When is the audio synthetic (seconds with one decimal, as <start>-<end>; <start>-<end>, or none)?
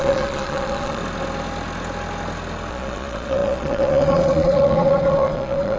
0.0-1.0; 2.7-5.8